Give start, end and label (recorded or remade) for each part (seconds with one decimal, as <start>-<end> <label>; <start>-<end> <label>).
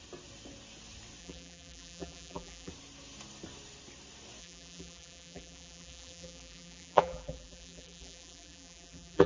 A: 0.0-1.2 recorded; 1.2-2.7 remade; 2.7-4.4 recorded; 4.4-9.3 remade